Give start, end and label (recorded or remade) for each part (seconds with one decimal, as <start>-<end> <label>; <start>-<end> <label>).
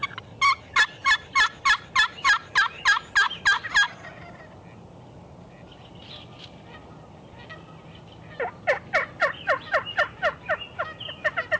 0.0-11.6 recorded